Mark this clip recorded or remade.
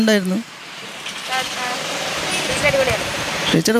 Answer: remade